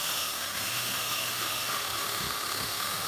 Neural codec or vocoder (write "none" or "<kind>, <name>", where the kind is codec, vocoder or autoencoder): autoencoder, DAC-VAE